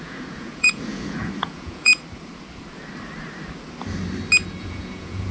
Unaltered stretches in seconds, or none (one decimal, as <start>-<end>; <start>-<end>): 1.9-4.6